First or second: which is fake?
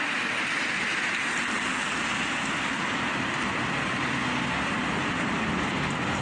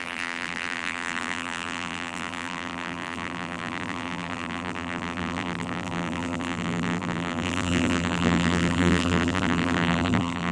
second